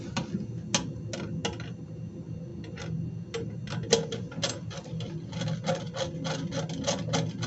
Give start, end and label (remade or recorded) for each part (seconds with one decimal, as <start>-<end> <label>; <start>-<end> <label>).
0.0-7.5 recorded